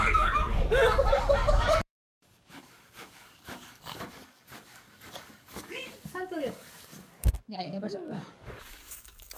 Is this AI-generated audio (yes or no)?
yes